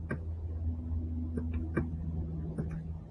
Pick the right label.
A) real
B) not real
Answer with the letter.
A